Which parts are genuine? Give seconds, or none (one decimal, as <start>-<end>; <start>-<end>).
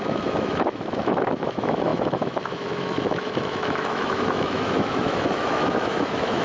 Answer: none